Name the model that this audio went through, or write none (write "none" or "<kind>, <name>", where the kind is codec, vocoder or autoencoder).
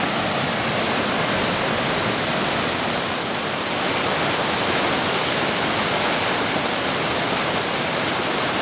none